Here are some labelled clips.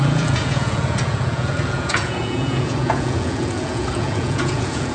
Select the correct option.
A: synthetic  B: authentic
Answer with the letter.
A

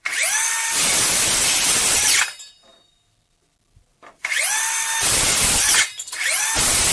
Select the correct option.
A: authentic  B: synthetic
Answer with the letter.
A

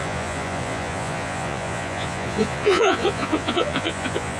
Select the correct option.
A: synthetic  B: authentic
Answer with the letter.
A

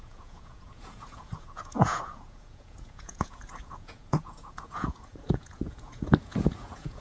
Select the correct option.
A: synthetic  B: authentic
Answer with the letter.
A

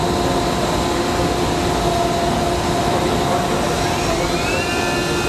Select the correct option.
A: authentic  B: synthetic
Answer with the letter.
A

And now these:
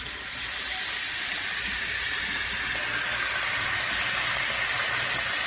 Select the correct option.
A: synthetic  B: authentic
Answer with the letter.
B